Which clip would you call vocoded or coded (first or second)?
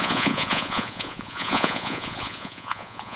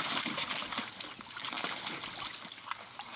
first